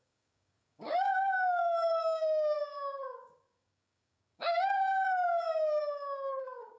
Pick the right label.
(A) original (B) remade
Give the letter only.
B